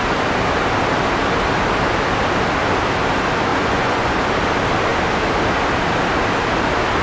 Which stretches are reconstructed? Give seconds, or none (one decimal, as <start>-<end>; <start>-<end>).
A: 3.5-4.1